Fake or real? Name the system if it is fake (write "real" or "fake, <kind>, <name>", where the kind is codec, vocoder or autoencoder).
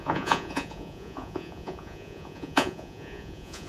fake, vocoder, Vocos